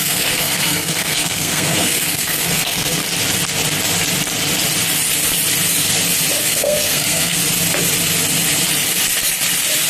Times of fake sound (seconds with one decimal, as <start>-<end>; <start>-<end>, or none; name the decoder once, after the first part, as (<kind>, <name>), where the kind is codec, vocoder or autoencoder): 0.0-3.0 (codec, SNAC); 6.4-7.4

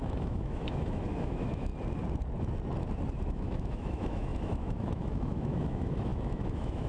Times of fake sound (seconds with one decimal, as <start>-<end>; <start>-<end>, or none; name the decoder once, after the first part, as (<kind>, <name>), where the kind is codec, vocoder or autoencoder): 0.0-1.7 (autoencoder, DAC-VAE); 3.3-6.9